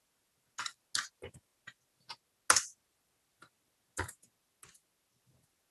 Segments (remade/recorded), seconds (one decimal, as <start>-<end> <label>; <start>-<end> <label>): 0.0-5.7 recorded